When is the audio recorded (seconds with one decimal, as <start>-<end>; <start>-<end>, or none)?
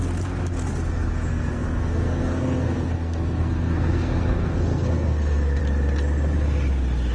0.0-1.3; 5.6-7.1